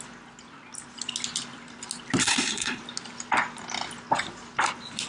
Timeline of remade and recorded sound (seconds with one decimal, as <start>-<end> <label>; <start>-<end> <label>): 0.0-2.2 recorded; 2.2-2.8 remade; 2.8-5.1 recorded